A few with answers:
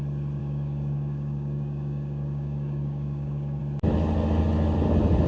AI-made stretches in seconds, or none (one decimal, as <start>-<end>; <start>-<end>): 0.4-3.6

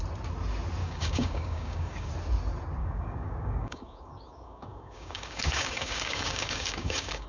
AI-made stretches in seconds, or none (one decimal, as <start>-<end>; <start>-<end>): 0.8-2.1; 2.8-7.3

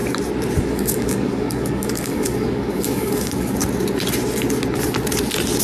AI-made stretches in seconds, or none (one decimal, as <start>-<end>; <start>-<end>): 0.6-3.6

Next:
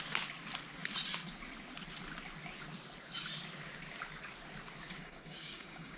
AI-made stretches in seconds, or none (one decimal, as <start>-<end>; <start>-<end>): 5.0-6.0